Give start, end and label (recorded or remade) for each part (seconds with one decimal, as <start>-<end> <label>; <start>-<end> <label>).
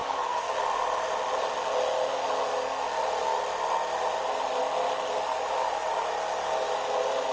0.0-0.5 remade; 0.5-7.3 recorded